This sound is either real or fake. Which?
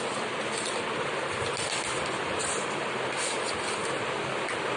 real